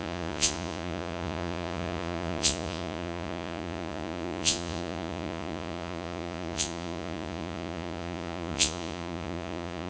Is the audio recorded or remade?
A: remade